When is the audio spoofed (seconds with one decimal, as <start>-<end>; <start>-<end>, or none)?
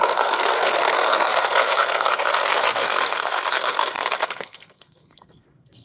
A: 0.0-5.8